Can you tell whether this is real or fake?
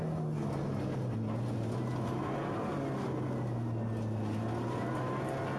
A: real